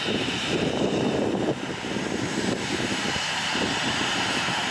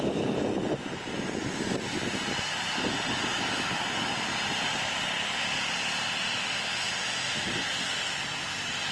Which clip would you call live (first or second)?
second